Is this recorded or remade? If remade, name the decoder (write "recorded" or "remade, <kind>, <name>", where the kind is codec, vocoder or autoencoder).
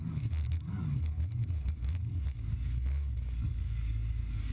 remade, codec, DAC